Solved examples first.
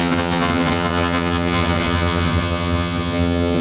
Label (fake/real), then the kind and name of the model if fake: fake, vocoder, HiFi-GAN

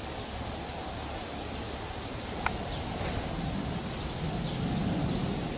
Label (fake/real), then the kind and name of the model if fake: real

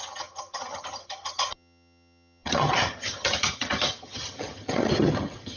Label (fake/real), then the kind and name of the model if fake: fake, vocoder, HiFi-GAN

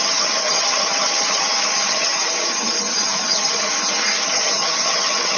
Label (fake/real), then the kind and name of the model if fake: fake, vocoder, HiFi-GAN